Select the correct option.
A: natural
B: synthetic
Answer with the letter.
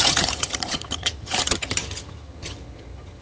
B